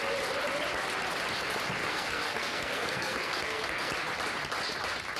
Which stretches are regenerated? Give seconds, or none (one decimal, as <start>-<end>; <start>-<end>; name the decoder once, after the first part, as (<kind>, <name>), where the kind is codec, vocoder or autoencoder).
1.8-3.9 (codec, SNAC)